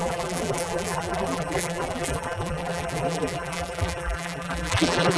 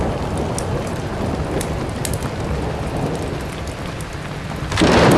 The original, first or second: second